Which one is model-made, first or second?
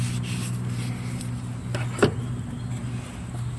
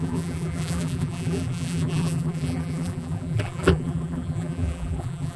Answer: second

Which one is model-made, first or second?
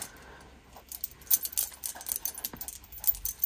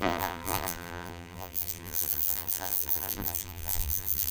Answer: second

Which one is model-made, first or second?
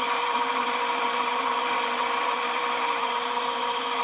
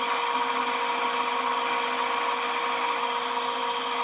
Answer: first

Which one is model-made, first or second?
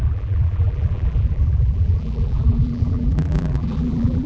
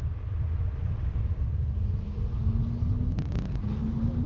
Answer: first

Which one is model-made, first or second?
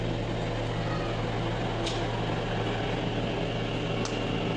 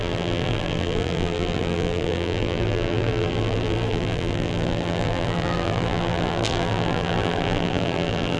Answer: second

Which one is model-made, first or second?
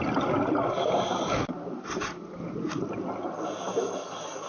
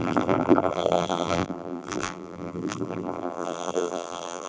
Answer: second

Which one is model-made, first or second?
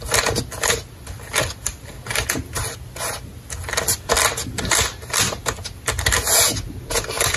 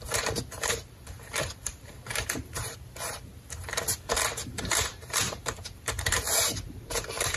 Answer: second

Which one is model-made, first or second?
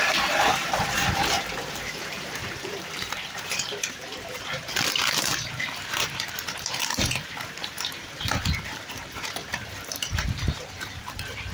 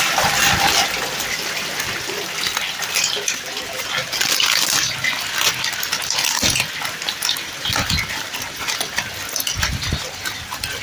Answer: first